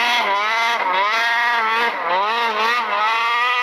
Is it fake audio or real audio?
real